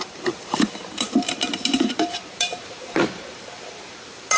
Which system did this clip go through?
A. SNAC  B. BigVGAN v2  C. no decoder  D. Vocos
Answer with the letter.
B